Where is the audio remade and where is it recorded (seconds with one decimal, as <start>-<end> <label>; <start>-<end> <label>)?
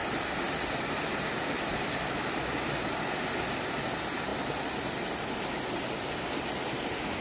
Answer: 0.0-7.2 recorded